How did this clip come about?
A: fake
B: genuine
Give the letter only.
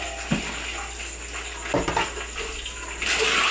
B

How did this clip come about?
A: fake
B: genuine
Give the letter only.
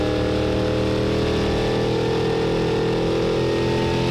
B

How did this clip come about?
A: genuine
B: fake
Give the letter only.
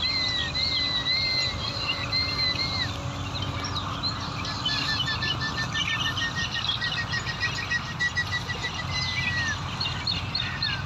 A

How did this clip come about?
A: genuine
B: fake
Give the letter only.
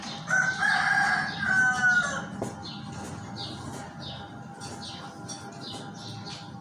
A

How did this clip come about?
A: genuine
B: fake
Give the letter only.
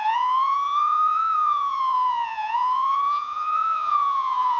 B